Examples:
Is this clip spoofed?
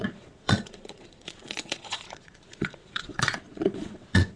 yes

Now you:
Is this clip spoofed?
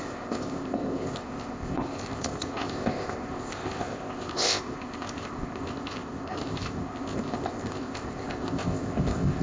yes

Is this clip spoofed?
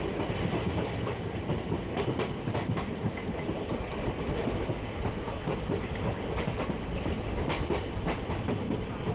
no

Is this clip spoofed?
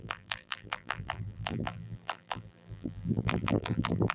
yes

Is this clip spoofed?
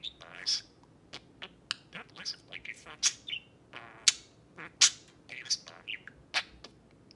no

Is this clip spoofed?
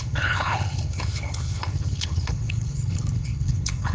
yes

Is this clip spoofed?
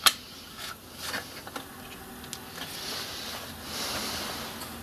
no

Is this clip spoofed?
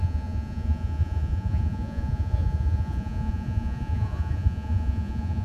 yes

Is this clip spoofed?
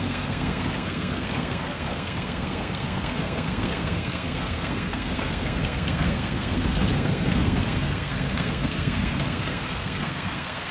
yes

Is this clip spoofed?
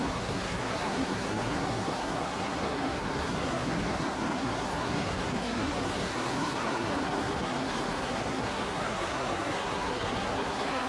yes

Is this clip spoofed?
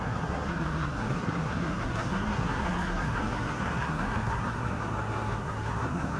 yes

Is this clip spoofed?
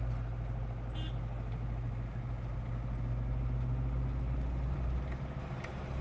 no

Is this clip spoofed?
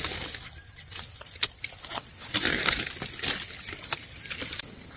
yes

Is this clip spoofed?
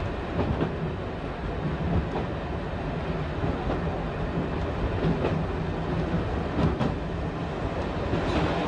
no